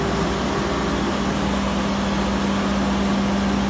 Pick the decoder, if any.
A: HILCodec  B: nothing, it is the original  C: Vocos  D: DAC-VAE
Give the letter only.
B